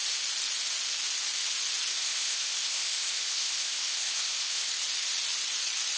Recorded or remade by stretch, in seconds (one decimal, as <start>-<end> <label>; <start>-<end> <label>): 0.0-1.9 recorded; 1.9-4.7 remade; 4.7-6.0 recorded